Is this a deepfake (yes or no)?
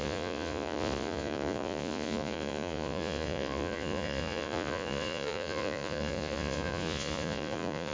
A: yes